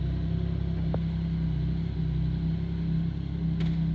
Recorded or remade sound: recorded